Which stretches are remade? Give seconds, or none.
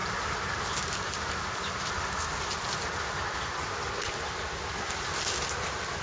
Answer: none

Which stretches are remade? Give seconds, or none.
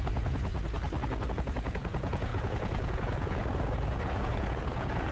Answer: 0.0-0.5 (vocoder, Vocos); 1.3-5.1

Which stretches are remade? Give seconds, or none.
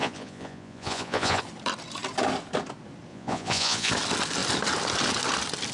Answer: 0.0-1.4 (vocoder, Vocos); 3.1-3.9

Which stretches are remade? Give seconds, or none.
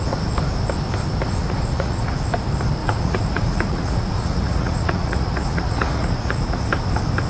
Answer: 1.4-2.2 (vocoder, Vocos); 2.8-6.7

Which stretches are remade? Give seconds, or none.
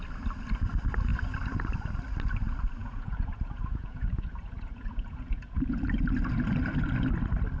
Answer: 2.8-5.8 (vocoder, Vocos)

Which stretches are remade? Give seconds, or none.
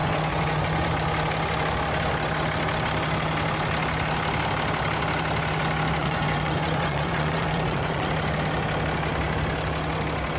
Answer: 0.0-0.9 (vocoder, Vocos); 6.0-8.1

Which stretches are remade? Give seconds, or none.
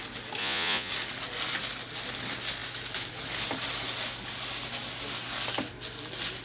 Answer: 0.4-0.9 (vocoder, Vocos)